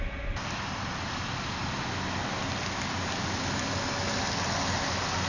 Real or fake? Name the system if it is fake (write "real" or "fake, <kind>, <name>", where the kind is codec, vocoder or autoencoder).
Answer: real